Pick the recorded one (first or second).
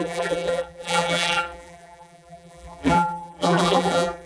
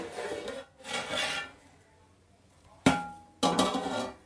second